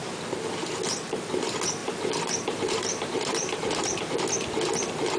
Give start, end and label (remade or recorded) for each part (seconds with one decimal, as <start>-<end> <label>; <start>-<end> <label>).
0.0-1.8 recorded; 1.8-4.2 remade; 4.2-5.2 recorded

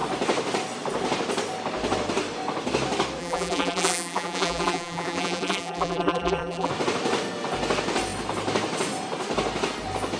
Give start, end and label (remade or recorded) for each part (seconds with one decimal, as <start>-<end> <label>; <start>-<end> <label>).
0.0-3.2 recorded; 3.2-6.7 remade; 6.7-10.2 recorded

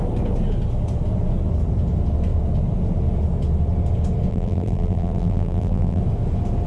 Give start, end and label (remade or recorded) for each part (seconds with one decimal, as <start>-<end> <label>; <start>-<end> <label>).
0.0-4.3 recorded; 4.3-6.0 remade; 6.0-6.7 recorded

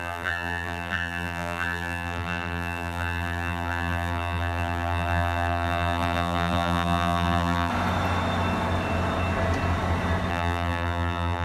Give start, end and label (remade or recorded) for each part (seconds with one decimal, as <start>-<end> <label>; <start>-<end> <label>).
0.0-7.7 remade; 7.7-10.3 recorded; 10.3-11.4 remade

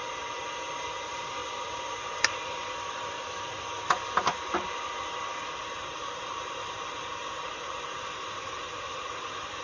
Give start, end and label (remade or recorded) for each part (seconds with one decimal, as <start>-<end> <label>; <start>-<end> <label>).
0.0-0.8 recorded; 0.8-1.4 remade; 1.4-5.5 recorded; 5.5-9.6 remade

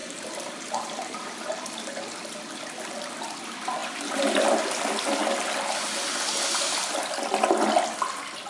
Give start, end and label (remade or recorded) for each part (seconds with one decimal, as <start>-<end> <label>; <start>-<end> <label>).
0.0-1.7 remade; 1.7-3.8 recorded; 3.8-4.6 remade; 4.6-8.5 recorded

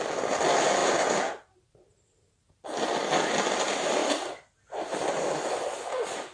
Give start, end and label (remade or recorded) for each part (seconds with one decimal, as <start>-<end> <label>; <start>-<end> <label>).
0.0-4.0 recorded; 4.0-4.6 remade; 4.6-6.3 recorded